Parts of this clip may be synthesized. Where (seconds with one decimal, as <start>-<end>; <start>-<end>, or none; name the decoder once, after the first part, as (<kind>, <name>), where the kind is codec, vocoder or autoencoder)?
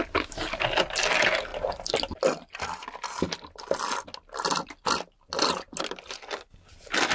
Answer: none